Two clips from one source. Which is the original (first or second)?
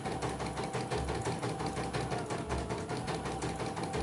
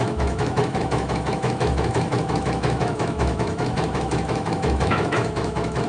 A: first